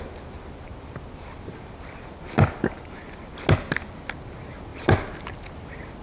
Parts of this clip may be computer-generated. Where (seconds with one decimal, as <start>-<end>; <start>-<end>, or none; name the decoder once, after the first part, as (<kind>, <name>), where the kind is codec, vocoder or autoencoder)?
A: none